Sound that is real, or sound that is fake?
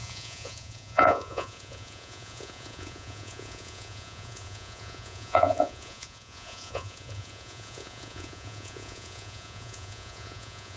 fake